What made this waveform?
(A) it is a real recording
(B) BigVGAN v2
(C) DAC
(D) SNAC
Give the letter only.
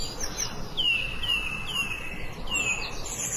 A